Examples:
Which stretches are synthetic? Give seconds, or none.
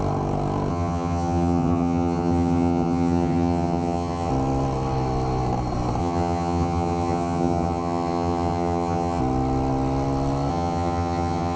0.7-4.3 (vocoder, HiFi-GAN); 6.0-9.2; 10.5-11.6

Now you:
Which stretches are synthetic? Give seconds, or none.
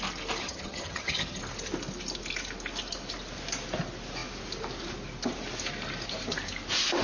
0.4-1.4 (vocoder, HiFi-GAN)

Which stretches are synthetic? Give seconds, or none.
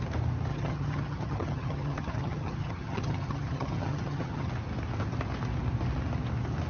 0.5-4.5 (vocoder, HiFi-GAN)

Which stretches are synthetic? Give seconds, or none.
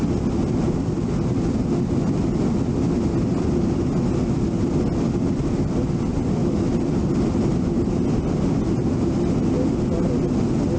none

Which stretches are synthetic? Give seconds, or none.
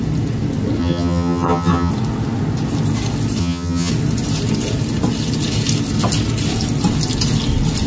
0.8-1.9 (vocoder, HiFi-GAN); 3.4-3.9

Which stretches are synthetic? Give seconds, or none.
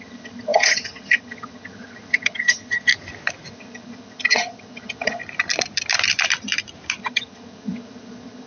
0.0-2.9 (vocoder, HiFi-GAN); 3.5-5.2; 7.0-8.5